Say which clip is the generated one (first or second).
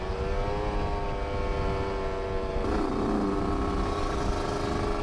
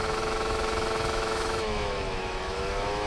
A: second